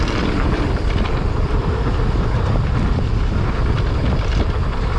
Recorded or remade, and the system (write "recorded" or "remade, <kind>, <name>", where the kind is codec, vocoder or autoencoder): recorded